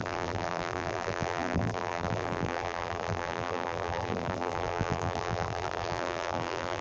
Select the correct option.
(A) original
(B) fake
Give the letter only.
B